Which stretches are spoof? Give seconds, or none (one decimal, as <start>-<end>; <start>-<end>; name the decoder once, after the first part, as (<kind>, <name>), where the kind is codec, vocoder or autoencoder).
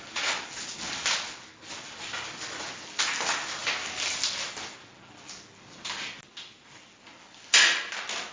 none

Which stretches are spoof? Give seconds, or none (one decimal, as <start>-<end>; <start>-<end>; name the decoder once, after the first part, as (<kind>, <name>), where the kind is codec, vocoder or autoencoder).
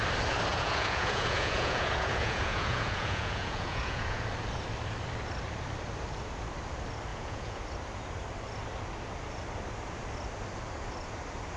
0.5-4.2 (vocoder, Vocos); 7.1-7.6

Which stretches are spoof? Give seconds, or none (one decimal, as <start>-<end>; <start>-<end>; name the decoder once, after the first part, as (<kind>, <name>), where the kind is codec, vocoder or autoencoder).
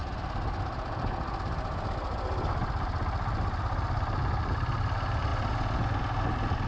none